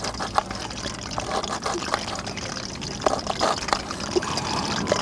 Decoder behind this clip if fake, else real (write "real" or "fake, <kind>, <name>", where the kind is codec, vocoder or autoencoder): real